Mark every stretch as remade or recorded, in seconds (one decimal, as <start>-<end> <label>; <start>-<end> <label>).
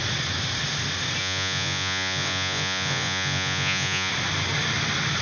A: 0.0-1.2 recorded; 1.2-4.1 remade; 4.1-5.2 recorded